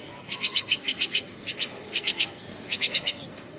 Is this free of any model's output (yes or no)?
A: no